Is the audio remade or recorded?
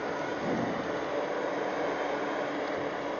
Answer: recorded